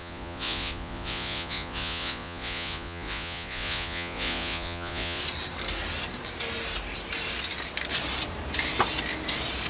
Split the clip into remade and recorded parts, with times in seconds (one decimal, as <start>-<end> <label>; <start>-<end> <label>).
0.0-5.2 remade; 5.2-9.7 recorded